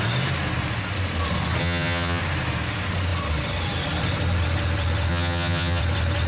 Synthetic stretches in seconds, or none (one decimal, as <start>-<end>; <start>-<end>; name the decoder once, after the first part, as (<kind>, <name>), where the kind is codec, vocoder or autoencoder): 1.6-2.2 (vocoder, HiFi-GAN); 5.1-5.8